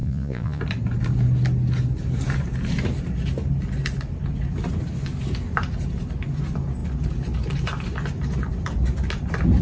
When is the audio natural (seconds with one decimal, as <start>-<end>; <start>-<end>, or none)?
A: 0.6-9.6